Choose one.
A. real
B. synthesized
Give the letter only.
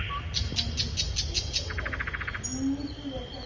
A